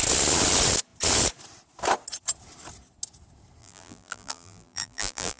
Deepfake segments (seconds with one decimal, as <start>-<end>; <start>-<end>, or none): 3.6-5.4